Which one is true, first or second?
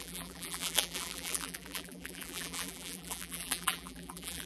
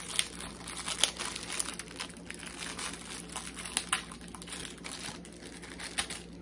second